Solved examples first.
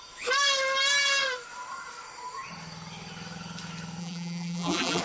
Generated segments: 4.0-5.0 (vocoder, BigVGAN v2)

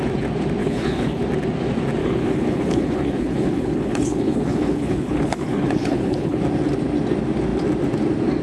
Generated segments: 0.6-1.2 (codec, HILCodec); 2.0-6.4

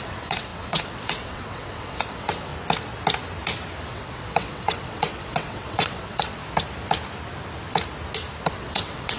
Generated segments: 0.0-2.5 (vocoder, WaveNeXt); 3.9-6.4; 8.5-9.2

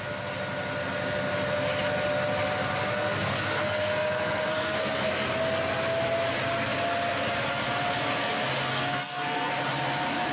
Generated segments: 2.9-5.1 (codec, SNAC); 8.7-9.5